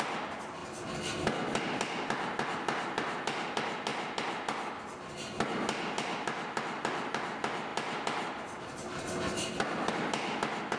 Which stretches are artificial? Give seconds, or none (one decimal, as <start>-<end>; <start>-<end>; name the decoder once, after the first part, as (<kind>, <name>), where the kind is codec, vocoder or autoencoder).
none